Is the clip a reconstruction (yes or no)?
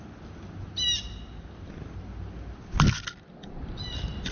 no